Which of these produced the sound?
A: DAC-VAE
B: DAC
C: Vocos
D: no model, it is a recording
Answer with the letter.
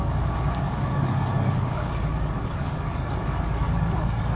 B